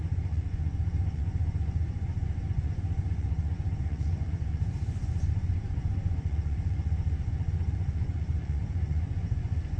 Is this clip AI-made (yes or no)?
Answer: yes